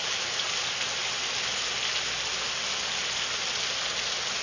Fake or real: real